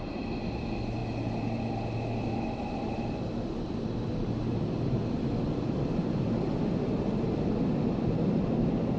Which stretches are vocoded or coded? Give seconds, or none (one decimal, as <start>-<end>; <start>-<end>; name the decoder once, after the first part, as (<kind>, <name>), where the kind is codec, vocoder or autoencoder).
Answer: none

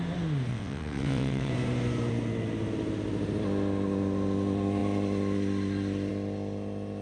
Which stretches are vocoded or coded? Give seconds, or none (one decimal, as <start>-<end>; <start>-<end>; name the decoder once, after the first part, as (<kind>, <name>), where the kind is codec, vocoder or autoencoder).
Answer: 0.5-1.5 (vocoder, WaveNeXt)

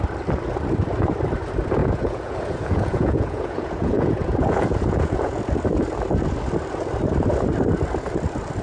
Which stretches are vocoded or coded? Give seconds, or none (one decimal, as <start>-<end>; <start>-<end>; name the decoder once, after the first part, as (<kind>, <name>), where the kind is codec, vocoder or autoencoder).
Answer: 1.8-5.4 (vocoder, Vocos)

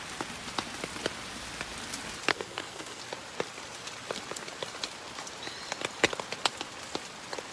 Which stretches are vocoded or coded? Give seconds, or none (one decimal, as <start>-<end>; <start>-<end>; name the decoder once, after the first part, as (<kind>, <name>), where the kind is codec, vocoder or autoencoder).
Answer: 2.3-3.0 (codec, SNAC)